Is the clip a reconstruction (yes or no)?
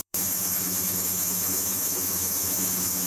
yes